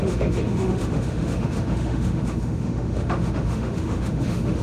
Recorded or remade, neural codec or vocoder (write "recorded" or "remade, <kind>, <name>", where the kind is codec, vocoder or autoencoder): remade, autoencoder, DAC-VAE